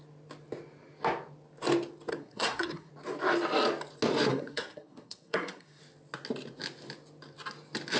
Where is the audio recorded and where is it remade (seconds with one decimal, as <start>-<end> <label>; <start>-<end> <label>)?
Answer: 0.0-2.1 recorded; 2.1-2.9 remade; 2.9-4.3 recorded; 4.3-5.8 remade; 5.8-8.0 recorded